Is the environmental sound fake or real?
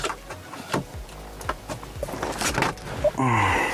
real